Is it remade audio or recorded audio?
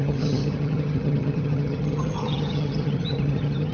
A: remade